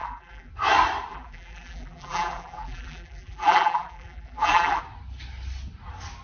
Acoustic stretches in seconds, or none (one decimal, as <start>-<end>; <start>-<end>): 0.5-1.1; 4.8-6.2